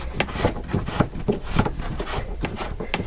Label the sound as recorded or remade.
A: recorded